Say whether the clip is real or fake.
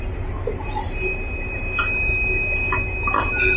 real